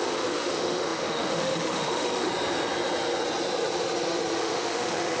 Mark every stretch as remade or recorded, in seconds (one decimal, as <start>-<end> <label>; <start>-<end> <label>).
0.0-2.3 remade; 2.3-4.4 recorded; 4.4-5.2 remade